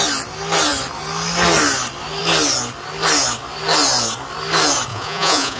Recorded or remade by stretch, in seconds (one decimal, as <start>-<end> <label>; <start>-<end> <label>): 0.0-4.9 recorded; 4.9-5.6 remade